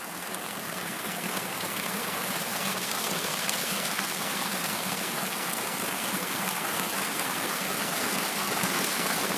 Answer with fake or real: fake